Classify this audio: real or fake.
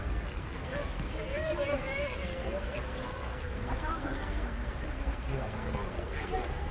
fake